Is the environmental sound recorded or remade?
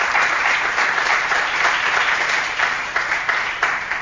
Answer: remade